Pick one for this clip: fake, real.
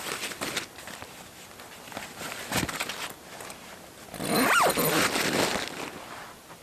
real